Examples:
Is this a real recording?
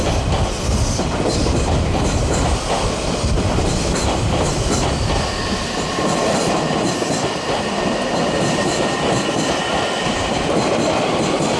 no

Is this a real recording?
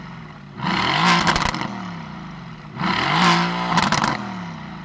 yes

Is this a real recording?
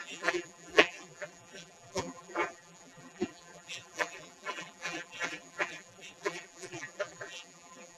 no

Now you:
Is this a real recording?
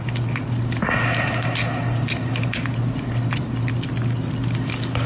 yes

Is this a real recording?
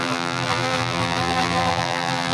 no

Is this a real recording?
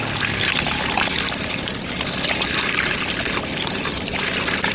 yes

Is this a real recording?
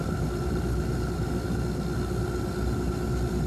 yes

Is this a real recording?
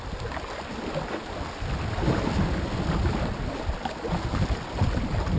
yes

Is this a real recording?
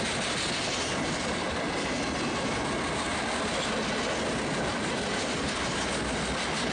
yes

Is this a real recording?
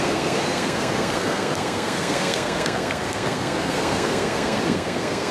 no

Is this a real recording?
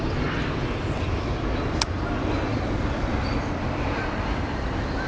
yes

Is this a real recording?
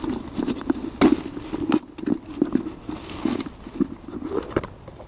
yes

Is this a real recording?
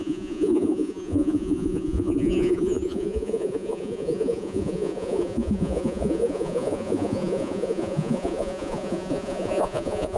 no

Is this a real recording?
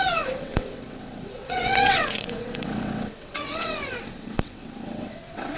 no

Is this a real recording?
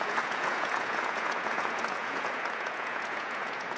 no